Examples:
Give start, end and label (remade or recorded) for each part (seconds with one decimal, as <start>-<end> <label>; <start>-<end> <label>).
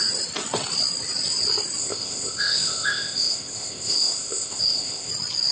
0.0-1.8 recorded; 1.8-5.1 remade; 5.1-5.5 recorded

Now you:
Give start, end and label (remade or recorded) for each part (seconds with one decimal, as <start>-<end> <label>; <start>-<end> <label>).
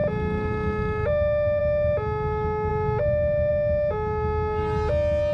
0.0-5.3 recorded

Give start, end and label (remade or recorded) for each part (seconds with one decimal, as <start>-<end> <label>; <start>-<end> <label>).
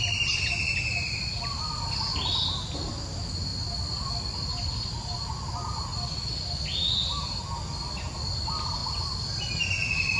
0.0-10.2 recorded